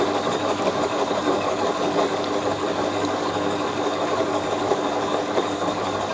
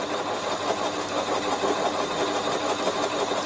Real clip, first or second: second